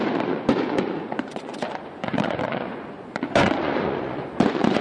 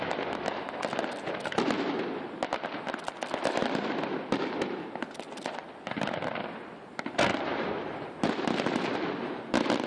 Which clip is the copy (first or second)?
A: first